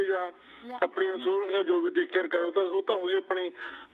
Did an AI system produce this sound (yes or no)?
yes